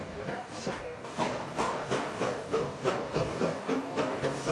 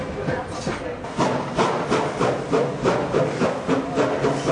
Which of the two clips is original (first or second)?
second